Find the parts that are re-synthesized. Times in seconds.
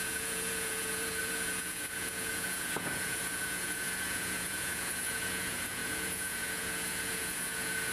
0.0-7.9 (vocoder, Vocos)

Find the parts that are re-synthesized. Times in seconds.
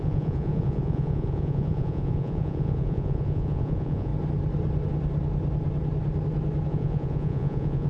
0.0-4.1 (vocoder, Vocos); 6.7-7.9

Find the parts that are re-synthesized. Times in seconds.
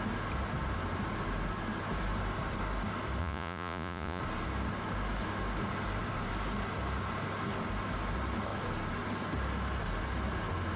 3.2-4.2 (vocoder, Vocos)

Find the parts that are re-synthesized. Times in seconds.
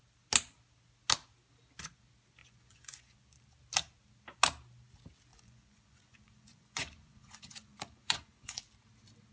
2.4-3.2 (vocoder, Vocos); 5.3-8.6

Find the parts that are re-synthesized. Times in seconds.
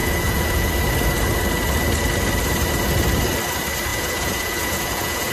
0.0-0.7 (vocoder, Vocos); 3.9-5.3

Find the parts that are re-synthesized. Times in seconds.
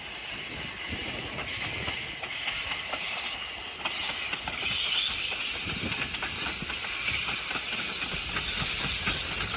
none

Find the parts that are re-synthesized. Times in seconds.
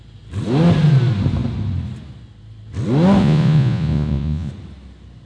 3.2-4.5 (vocoder, Vocos)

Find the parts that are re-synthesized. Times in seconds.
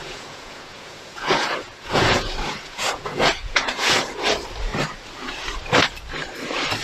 0.0-4.1 (vocoder, Vocos)